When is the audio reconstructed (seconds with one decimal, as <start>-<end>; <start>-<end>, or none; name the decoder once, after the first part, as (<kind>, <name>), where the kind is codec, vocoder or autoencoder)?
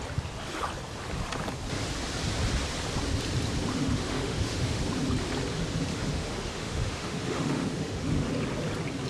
3.7-4.8 (autoencoder, DAC-VAE); 5.9-8.3